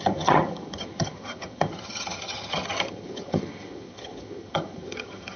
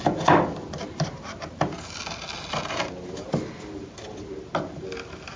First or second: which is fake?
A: first